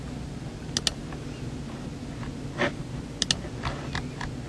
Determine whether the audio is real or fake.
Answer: real